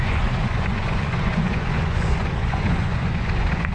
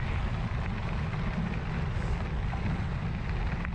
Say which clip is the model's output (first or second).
first